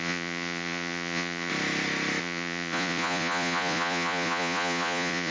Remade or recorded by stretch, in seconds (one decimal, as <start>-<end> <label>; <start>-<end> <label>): 0.0-1.5 remade; 1.5-2.2 recorded; 2.2-5.3 remade